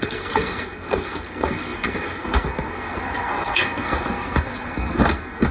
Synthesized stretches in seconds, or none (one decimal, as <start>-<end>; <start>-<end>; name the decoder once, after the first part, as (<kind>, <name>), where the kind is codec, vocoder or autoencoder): 0.0-5.5 (codec, SNAC)